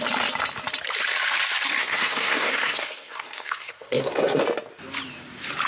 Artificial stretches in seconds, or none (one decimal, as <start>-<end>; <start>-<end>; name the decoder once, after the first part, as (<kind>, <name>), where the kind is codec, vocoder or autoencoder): 1.8-4.4 (codec, SNAC)